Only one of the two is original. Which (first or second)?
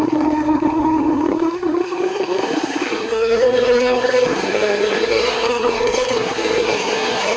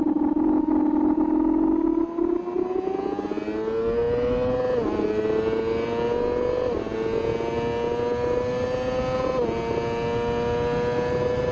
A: second